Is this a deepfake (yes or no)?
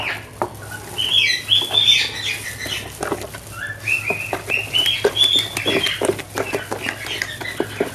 no